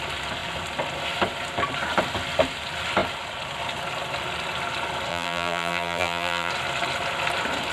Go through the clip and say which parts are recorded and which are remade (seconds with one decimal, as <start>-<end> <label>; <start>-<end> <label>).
0.0-5.1 recorded; 5.1-6.5 remade; 6.5-7.7 recorded